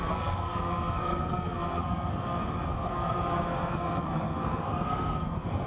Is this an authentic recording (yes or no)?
no